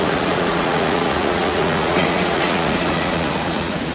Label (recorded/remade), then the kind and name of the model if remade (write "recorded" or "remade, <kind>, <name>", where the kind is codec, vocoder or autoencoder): remade, vocoder, Vocos